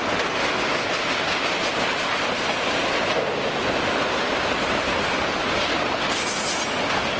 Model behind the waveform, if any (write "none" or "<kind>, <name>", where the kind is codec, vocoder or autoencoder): none